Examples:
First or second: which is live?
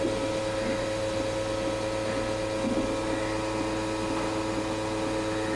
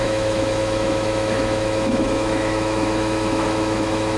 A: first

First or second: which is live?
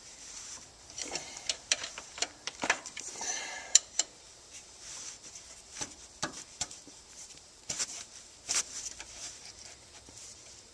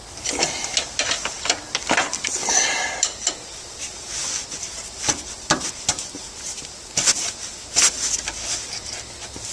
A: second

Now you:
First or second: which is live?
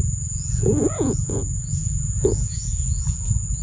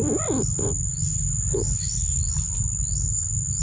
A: second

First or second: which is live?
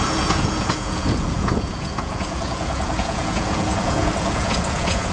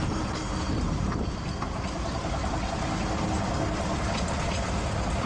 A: second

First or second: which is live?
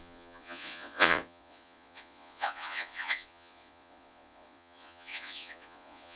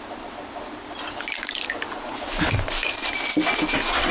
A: second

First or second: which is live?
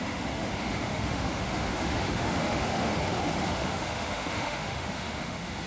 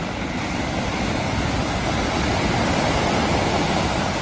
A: second